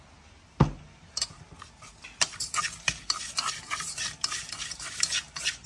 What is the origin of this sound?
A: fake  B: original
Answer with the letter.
B